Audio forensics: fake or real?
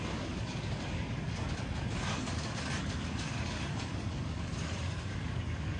fake